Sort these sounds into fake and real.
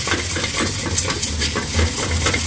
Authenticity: real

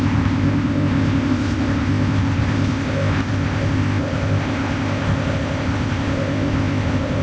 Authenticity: fake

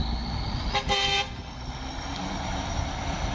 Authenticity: real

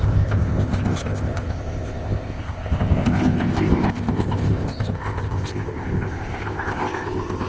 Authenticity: fake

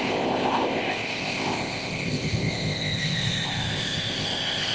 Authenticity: fake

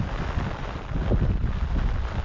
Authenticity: real